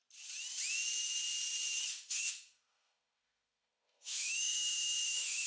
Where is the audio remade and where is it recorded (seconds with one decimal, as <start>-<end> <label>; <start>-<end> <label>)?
0.0-1.9 recorded; 1.9-5.5 remade